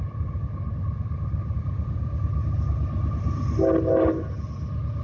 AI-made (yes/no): no